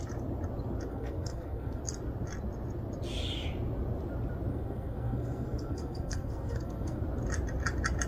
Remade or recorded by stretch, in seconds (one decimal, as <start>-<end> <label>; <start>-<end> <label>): 0.0-0.9 recorded; 0.9-1.8 remade; 1.8-4.5 recorded; 4.5-7.0 remade; 7.0-8.1 recorded